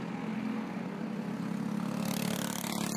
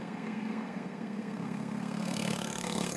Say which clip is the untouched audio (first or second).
first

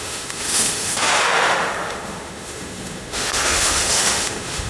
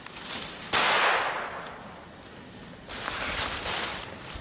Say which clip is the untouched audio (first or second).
second